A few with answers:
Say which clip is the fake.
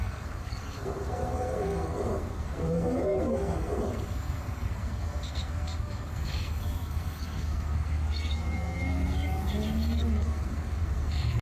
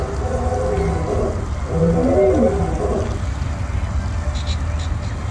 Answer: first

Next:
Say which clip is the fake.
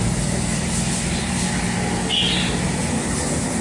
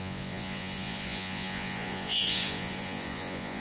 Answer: second